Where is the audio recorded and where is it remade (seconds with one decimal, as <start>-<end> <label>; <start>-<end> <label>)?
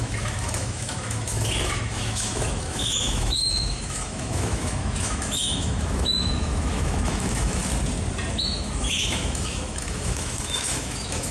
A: 0.0-7.6 remade; 7.6-8.3 recorded; 8.3-11.3 remade